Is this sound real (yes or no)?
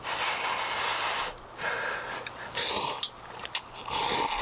yes